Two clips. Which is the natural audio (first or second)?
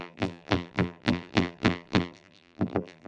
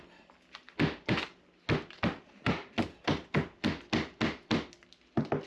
second